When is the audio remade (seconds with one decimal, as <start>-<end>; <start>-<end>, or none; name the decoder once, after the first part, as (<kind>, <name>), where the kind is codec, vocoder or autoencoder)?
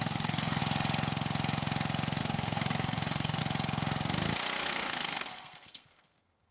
0.0-0.6 (codec, SNAC); 2.2-3.4; 4.6-6.5